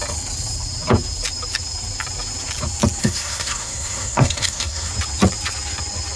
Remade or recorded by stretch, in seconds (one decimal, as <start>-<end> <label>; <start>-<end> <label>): 0.0-3.0 recorded; 3.0-4.9 remade; 4.9-6.2 recorded